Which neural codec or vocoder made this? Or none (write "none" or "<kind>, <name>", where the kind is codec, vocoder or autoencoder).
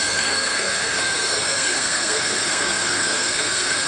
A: codec, SNAC